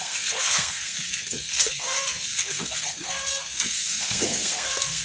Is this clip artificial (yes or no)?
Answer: yes